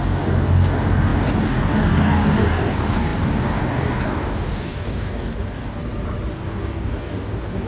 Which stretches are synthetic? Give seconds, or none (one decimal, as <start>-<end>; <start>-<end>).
0.0-5.8; 6.3-7.7